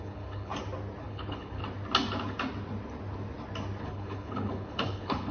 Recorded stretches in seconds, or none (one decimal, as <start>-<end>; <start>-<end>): 0.5-1.0; 1.6-3.8